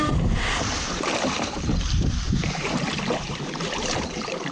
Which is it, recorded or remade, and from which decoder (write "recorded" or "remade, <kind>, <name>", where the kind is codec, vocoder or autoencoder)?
remade, vocoder, BigVGAN v2